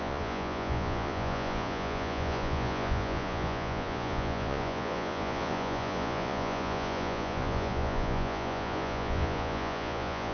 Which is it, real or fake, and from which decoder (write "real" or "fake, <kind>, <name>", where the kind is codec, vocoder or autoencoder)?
fake, vocoder, Vocos